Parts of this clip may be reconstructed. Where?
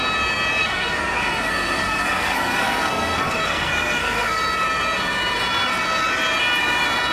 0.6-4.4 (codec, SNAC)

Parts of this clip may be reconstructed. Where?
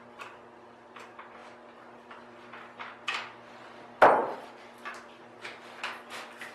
none